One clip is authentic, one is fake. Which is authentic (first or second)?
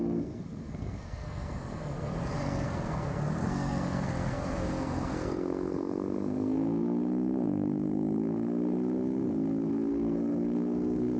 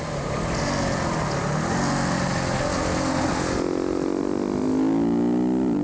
second